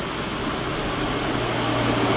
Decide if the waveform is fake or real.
real